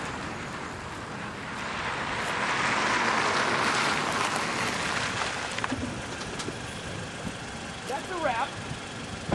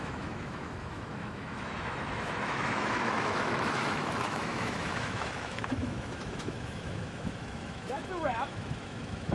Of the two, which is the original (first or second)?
first